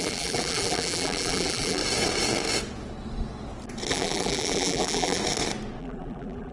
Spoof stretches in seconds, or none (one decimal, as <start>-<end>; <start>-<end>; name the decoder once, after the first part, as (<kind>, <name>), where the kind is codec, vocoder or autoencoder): 0.0-1.8 (vocoder, BigVGAN v2); 3.9-5.2; 5.8-6.5